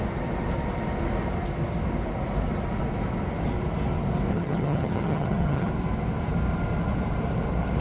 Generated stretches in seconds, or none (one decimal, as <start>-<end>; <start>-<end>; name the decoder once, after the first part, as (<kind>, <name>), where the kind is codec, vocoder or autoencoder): 4.3-5.7 (vocoder, HiFi-GAN)